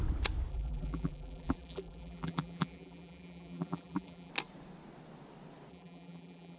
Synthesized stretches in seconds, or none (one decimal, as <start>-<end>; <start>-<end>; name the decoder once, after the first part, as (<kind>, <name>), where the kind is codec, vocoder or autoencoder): 0.5-4.3 (vocoder, BigVGAN v2); 5.7-6.6